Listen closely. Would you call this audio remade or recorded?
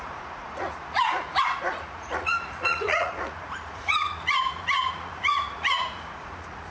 remade